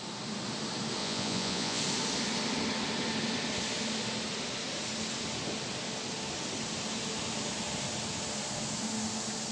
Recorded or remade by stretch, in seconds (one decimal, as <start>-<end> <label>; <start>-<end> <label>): 0.0-1.0 recorded; 1.0-1.8 remade; 1.8-9.5 recorded